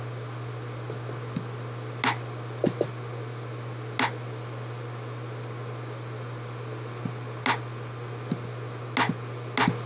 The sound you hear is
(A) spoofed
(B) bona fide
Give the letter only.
B